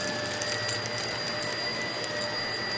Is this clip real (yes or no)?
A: yes